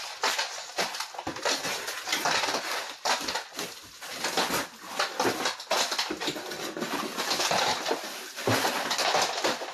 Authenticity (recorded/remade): recorded